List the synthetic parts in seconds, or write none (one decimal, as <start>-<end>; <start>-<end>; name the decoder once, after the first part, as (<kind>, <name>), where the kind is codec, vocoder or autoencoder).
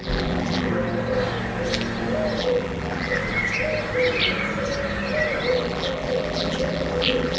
0.0-0.7 (vocoder, BigVGAN v2); 2.4-3.2; 5.5-7.4